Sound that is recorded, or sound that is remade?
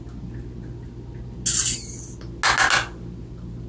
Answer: recorded